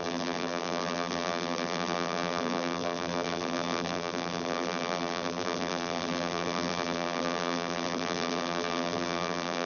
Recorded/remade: remade